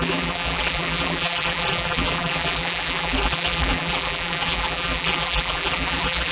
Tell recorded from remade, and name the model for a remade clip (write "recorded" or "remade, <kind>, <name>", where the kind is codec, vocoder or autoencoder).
remade, vocoder, BigVGAN v2